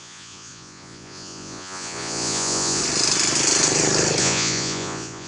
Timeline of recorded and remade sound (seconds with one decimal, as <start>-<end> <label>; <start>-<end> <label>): 0.0-2.8 remade; 2.8-4.2 recorded; 4.2-5.3 remade